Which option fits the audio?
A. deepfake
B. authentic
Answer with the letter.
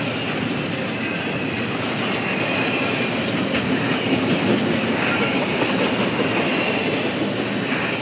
B